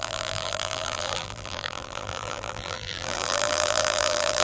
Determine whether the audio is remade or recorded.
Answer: remade